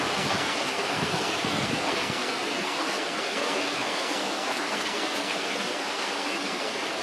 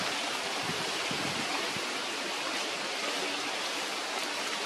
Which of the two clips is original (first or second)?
second